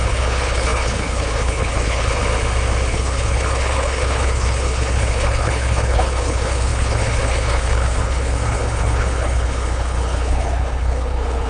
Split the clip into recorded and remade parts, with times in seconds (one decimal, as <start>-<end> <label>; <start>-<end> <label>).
0.0-2.2 remade; 2.2-2.9 recorded; 2.9-11.5 remade